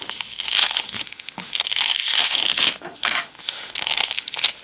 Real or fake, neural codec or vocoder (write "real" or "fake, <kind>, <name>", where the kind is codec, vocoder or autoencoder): fake, autoencoder, DAC-VAE